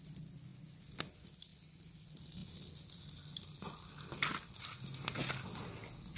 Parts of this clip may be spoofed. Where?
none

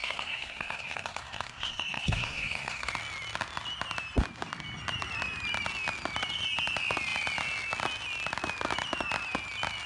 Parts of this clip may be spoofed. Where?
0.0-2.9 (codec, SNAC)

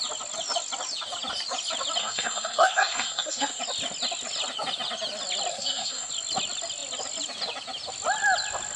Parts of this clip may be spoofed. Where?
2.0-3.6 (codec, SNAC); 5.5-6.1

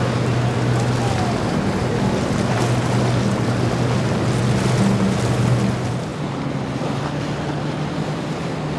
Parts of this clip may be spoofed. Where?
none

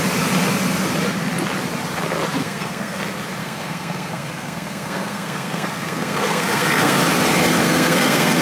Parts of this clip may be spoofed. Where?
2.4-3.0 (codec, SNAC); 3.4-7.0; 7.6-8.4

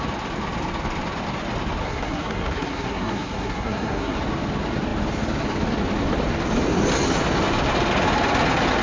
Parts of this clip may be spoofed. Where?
1.8-4.2 (codec, SNAC)